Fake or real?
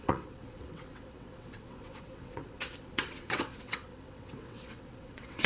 fake